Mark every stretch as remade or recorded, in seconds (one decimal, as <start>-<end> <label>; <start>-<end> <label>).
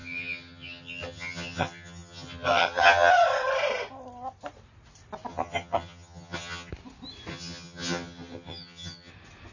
0.0-3.1 remade; 3.1-5.3 recorded; 5.3-6.7 remade; 6.7-7.3 recorded; 7.3-9.1 remade; 9.1-9.5 recorded